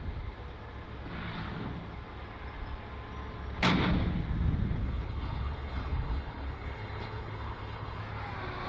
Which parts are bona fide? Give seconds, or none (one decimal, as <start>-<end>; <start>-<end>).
0.0-4.8; 8.0-8.7